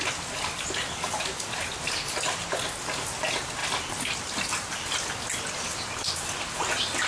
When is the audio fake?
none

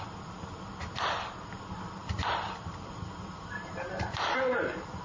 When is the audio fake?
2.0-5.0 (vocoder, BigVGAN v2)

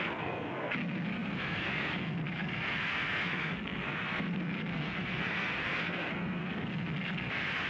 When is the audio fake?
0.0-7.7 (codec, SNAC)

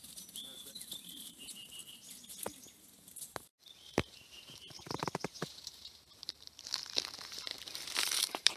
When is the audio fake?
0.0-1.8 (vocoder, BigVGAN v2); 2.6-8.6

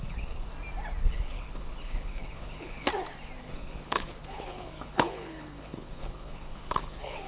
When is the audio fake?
0.0-0.5 (codec, HILCodec); 1.0-2.9; 3.4-7.3